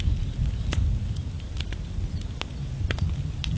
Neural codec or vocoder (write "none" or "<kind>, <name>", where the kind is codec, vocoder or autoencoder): none